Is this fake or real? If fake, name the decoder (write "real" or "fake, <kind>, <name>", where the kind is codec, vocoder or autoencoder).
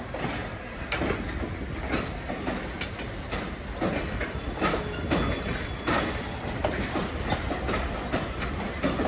real